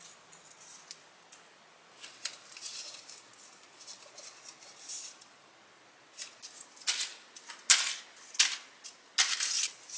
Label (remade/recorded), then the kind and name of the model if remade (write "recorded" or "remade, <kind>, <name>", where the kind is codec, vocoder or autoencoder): recorded